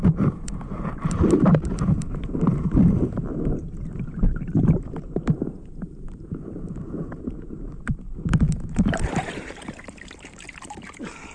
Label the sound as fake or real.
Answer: fake